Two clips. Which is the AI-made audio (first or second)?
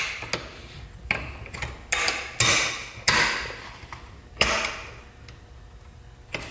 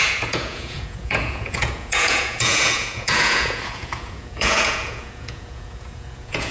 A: second